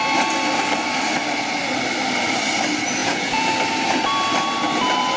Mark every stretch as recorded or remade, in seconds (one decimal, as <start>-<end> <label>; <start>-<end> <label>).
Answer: 0.0-3.0 recorded; 3.0-3.5 remade; 3.5-5.2 recorded